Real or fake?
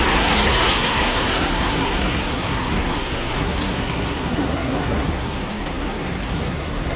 fake